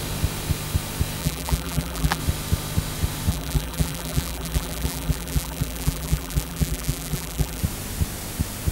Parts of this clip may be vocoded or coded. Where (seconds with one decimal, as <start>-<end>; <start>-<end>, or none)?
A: 1.2-2.2; 3.3-7.6